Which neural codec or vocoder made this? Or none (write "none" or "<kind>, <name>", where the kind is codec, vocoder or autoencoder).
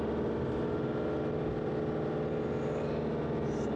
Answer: none